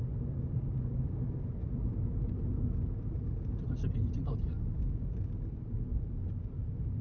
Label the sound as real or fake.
real